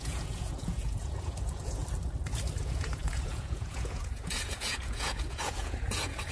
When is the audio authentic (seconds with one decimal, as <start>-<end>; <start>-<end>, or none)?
1.8-2.6